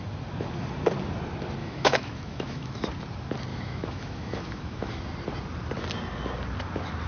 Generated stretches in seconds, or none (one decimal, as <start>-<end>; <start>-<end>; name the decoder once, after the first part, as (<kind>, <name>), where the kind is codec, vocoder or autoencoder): 1.6-2.8 (autoencoder, DAC-VAE); 3.5-5.0